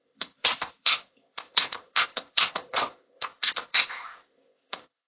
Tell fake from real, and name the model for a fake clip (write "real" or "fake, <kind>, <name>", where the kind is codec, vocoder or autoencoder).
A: fake, codec, ZipCodec